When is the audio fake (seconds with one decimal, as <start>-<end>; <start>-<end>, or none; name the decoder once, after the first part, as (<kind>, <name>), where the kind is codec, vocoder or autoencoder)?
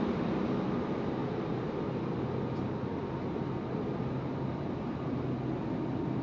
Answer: 1.2-1.8 (vocoder, BigVGAN v2)